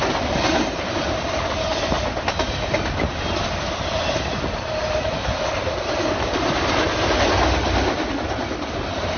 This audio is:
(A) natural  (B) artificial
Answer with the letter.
A